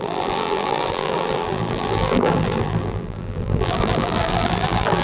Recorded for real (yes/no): no